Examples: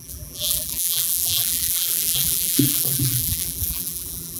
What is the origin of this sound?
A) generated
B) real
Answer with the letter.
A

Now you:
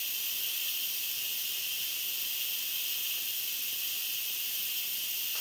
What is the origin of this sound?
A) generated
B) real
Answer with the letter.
B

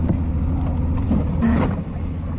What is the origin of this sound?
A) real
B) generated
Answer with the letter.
A